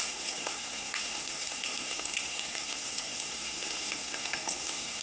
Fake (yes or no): yes